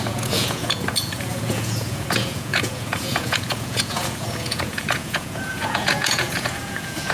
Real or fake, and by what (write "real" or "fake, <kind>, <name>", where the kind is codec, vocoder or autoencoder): fake, vocoder, Vocos